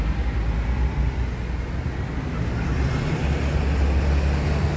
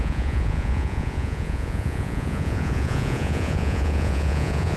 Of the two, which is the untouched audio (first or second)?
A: first